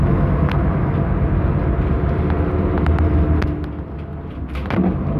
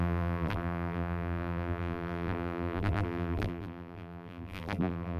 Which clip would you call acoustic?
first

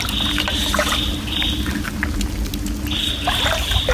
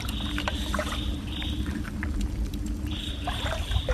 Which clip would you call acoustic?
first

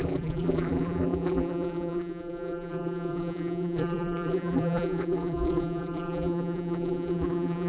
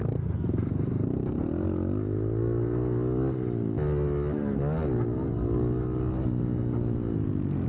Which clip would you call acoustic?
second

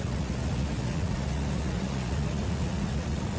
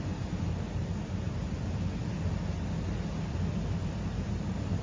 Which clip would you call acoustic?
second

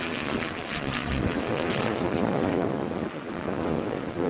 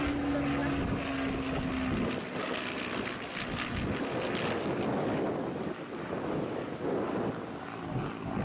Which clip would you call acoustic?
second